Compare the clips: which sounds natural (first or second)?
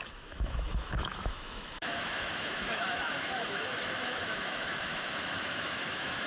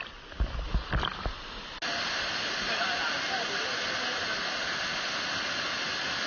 second